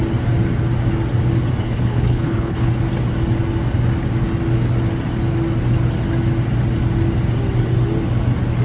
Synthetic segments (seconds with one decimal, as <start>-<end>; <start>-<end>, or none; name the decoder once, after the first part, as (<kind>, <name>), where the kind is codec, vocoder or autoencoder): 1.6-2.7 (codec, HILCodec)